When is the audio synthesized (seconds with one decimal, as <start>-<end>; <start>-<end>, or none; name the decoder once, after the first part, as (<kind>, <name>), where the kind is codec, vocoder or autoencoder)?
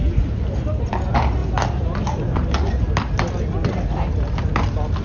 none